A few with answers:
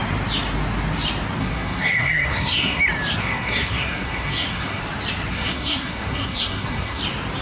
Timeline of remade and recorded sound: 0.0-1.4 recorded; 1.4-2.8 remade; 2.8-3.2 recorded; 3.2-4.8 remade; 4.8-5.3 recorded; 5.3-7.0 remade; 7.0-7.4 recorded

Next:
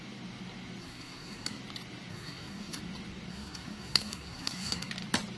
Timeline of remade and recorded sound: 0.0-0.8 recorded; 0.8-1.6 remade; 1.6-2.1 recorded; 2.1-2.8 remade; 2.8-3.3 recorded; 3.3-4.9 remade; 4.9-5.4 recorded

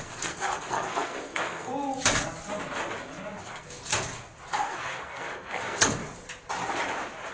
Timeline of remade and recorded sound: 0.0-1.7 remade; 1.7-3.4 recorded; 3.4-3.9 remade; 3.9-4.5 recorded; 4.5-6.0 remade; 6.0-7.3 recorded

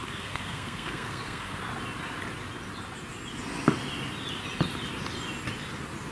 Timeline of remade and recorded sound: 0.0-1.6 remade; 1.6-6.1 recorded